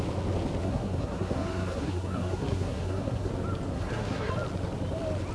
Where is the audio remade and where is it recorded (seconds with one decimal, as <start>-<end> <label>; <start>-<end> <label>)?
0.0-0.6 recorded; 0.6-3.3 remade; 3.3-3.7 recorded; 3.7-4.3 remade; 4.3-5.3 recorded